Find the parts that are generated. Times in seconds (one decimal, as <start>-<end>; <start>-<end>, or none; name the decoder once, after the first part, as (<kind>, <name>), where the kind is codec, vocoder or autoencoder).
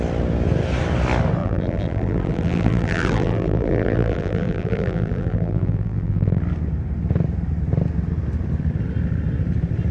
1.4-6.4 (vocoder, BigVGAN v2)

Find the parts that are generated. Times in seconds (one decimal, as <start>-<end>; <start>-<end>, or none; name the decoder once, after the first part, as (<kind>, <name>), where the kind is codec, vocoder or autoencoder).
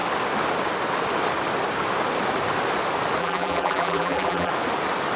3.2-4.5 (vocoder, BigVGAN v2)